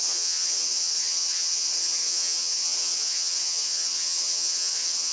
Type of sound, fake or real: fake